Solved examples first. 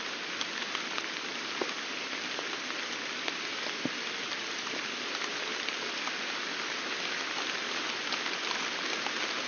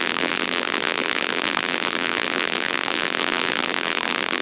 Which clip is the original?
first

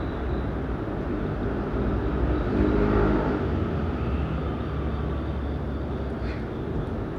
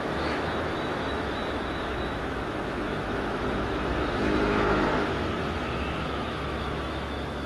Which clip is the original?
first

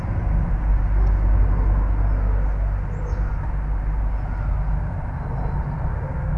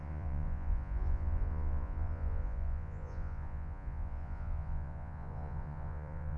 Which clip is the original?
first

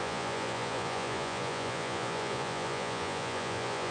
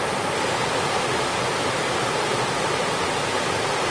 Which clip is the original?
second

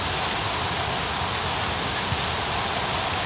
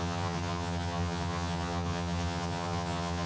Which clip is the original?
first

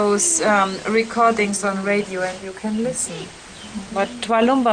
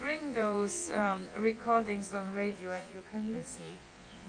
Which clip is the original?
first